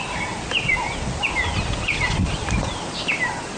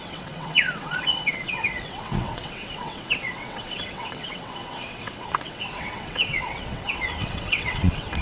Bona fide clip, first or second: first